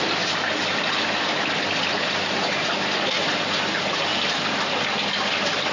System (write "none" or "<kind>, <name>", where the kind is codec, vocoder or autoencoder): vocoder, BigVGAN v2